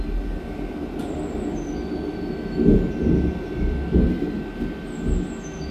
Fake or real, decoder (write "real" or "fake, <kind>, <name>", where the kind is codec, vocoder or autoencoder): real